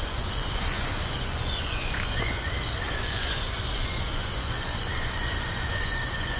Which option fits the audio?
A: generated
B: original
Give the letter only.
A